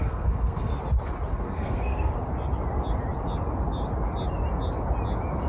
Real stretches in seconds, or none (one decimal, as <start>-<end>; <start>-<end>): 0.7-1.3; 2.1-5.5